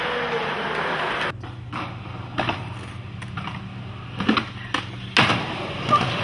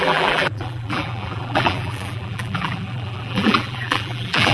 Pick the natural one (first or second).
first